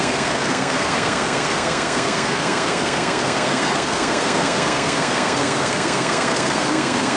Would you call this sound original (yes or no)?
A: no